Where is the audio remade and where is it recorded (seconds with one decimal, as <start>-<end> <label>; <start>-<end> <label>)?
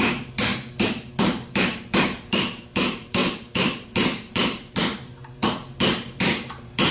0.0-0.5 remade; 0.5-1.2 recorded; 1.2-3.2 remade; 3.2-3.8 recorded; 3.8-6.9 remade